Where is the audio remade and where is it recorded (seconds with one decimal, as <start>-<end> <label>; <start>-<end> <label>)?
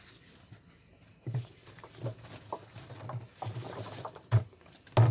0.0-1.1 recorded; 1.1-2.0 remade; 2.0-3.3 recorded; 3.3-4.6 remade; 4.6-5.1 recorded